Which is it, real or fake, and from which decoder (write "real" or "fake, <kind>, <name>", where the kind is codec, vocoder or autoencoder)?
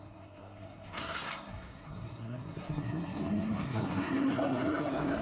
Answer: fake, codec, SNAC